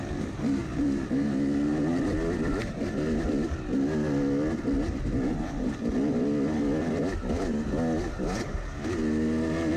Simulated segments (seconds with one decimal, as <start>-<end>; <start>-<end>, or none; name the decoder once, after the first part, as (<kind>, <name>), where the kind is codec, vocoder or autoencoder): none